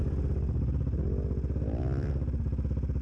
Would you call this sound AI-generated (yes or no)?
no